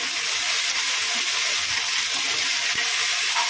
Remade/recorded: recorded